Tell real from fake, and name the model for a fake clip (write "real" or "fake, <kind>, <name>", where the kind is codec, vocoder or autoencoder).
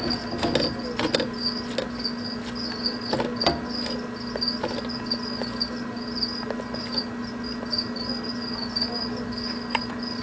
real